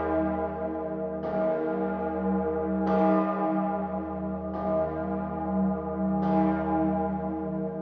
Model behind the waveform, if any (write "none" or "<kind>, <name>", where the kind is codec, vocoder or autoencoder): none